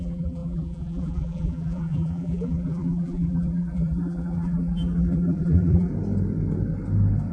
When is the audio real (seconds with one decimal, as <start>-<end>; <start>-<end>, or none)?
5.9-7.3